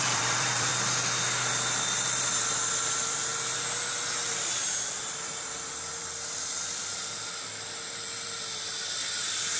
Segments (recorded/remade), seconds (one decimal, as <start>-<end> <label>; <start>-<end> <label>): 0.0-0.7 remade; 0.7-2.2 recorded; 2.2-3.3 remade; 3.3-5.0 recorded; 5.0-9.6 remade